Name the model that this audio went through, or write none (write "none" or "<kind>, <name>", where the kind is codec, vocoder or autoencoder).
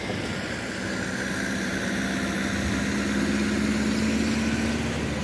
none